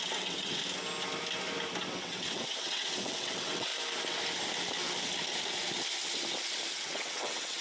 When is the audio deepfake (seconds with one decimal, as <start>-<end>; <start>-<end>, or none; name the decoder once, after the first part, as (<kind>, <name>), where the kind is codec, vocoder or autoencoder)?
0.0-0.6 (vocoder, WaveNeXt); 1.9-3.7; 6.7-7.6